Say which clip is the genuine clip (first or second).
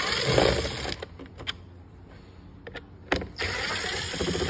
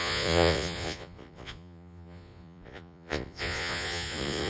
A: first